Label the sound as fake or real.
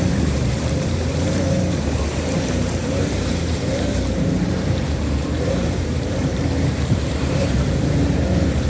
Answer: fake